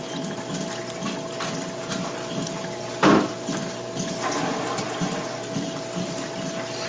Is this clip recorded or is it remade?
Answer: recorded